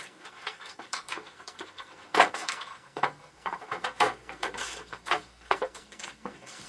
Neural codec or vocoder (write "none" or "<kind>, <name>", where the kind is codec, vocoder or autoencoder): codec, SNAC